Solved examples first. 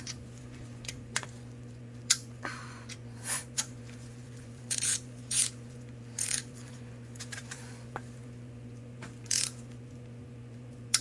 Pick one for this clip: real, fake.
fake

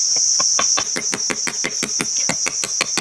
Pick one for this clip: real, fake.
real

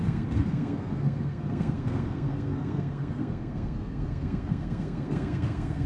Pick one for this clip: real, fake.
fake